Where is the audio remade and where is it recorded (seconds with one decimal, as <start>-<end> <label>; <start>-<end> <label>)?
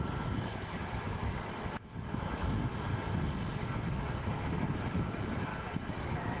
0.0-2.7 remade; 2.7-3.6 recorded; 3.6-5.5 remade; 5.5-6.0 recorded; 6.0-6.4 remade